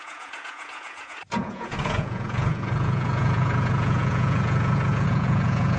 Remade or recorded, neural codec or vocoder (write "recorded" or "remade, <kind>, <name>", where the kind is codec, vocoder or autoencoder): remade, vocoder, Vocos